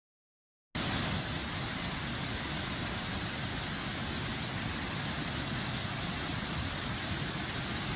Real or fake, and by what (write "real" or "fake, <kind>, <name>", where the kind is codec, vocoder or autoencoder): real